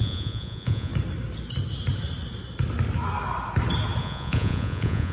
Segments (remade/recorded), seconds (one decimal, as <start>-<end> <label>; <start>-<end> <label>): 0.0-0.9 remade; 0.9-4.0 recorded; 4.0-5.1 remade